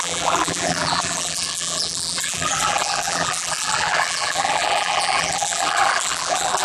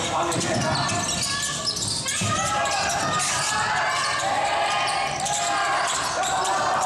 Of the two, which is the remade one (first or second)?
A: first